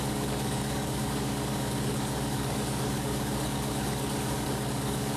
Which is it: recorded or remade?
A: remade